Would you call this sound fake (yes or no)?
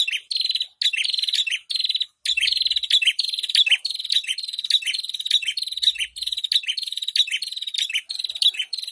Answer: no